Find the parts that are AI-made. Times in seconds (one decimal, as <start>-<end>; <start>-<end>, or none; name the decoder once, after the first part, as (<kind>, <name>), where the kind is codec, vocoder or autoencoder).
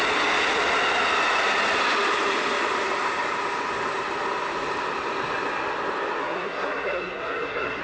6.2-7.8 (codec, SNAC)